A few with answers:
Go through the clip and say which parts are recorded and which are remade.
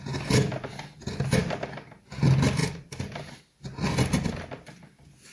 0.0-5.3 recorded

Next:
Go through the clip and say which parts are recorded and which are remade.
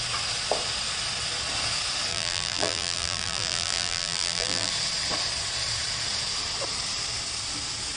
0.0-2.1 recorded; 2.1-4.7 remade; 4.7-8.0 recorded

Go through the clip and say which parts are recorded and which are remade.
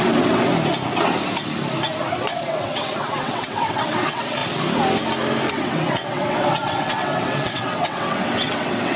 0.0-0.5 remade; 0.5-2.1 recorded; 2.1-4.4 remade; 4.4-5.5 recorded; 5.5-9.0 remade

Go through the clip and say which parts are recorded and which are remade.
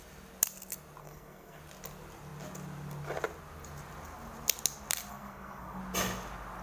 0.0-1.0 recorded; 1.0-1.6 remade; 1.6-5.1 recorded; 5.1-5.8 remade; 5.8-6.6 recorded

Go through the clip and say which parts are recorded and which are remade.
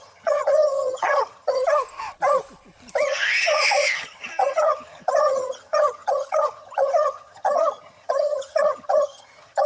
0.0-1.6 remade; 1.6-3.0 recorded; 3.0-9.7 remade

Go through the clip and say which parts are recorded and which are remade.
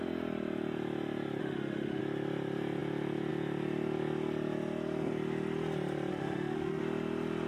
0.0-1.4 recorded; 1.4-2.0 remade; 2.0-6.1 recorded; 6.1-6.8 remade; 6.8-7.5 recorded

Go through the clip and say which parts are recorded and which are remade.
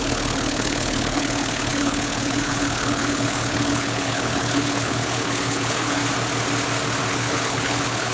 0.0-6.0 remade; 6.0-7.1 recorded; 7.1-8.1 remade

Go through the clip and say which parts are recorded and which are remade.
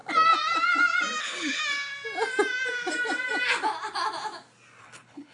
0.0-1.2 recorded; 1.2-1.6 remade; 1.6-4.8 recorded; 4.8-5.3 remade